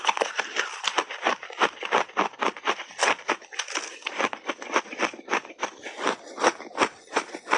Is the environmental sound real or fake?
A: real